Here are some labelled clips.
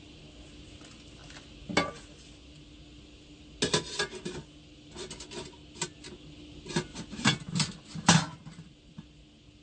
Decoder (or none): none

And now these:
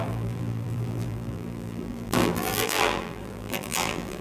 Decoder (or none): vocoder, BigVGAN v2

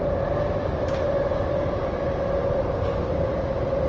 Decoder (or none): none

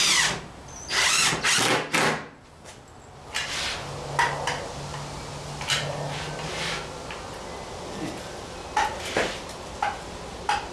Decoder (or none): none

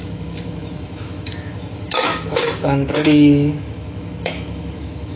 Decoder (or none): autoencoder, DAC-VAE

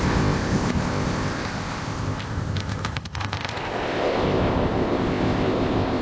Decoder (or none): codec, ZipCodec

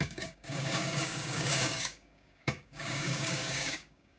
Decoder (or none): codec, DAC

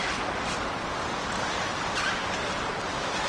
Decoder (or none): none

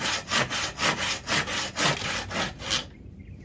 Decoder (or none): none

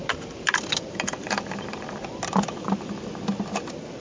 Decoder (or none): none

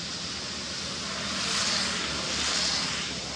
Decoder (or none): none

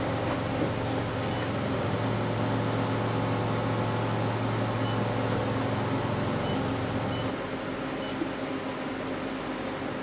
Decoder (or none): none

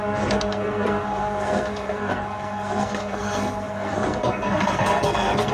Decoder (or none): codec, SNAC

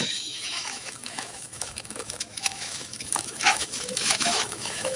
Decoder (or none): autoencoder, DAC-VAE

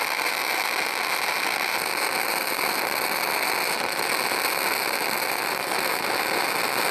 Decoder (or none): none